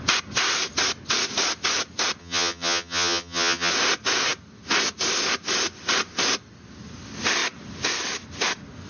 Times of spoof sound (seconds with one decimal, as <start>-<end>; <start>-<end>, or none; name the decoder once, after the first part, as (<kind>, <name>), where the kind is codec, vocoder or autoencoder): 2.2-3.7 (vocoder, HiFi-GAN)